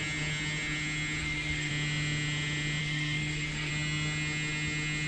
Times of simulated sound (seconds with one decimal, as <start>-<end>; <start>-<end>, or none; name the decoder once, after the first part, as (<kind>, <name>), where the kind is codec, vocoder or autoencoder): 1.2-1.7 (codec, SNAC); 2.8-3.7